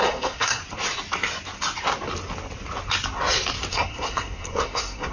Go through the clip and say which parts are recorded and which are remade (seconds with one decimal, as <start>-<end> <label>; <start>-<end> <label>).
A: 0.0-0.6 remade; 0.6-3.7 recorded; 3.7-5.1 remade